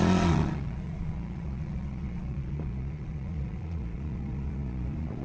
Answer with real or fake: fake